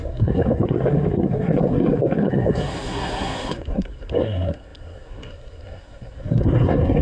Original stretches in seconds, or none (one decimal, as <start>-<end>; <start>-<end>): none